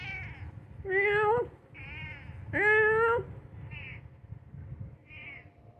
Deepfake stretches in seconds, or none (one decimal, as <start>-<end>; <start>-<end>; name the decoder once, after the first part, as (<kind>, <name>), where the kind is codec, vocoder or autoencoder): none